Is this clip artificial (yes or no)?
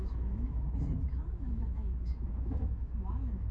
yes